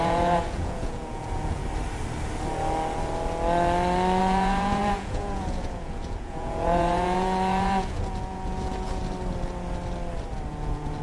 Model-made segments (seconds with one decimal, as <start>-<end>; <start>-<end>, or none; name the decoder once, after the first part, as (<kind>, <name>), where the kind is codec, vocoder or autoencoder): 0.0-1.6 (vocoder, Vocos); 4.2-9.0; 10.5-11.0